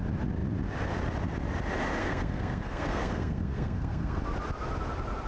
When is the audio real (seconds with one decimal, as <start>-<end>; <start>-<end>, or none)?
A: 0.0-2.0; 4.2-5.3